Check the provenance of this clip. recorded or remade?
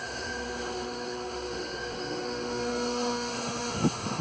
remade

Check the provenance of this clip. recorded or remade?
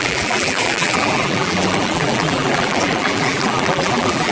remade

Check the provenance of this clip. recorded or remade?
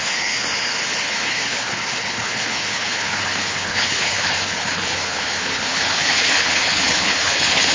remade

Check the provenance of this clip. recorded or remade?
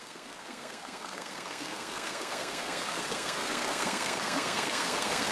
remade